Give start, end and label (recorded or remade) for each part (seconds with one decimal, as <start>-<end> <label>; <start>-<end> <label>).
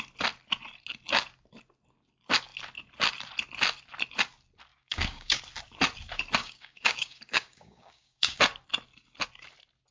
0.0-4.7 recorded; 4.7-5.4 remade; 5.4-6.4 recorded; 6.4-8.4 remade; 8.4-9.9 recorded